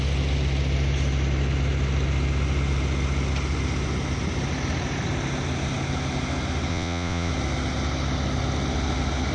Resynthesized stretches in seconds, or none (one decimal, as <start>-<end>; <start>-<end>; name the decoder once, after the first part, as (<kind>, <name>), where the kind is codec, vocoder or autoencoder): 6.7-7.3 (vocoder, Vocos)